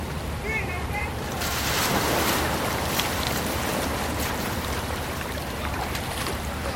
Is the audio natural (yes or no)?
no